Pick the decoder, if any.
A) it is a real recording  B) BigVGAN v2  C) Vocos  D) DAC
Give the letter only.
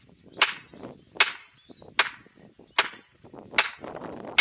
A